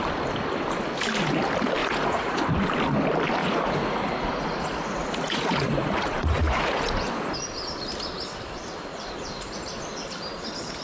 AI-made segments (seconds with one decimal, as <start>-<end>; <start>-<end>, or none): 1.8-2.4; 3.4-7.1; 8.9-9.6